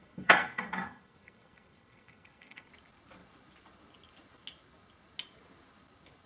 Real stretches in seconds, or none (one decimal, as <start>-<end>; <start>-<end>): 2.7-6.3